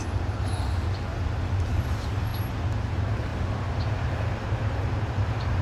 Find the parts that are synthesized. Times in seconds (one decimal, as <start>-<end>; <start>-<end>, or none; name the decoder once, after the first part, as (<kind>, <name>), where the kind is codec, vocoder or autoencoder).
0.0-2.3 (vocoder, BigVGAN v2); 2.9-3.3; 4.0-5.6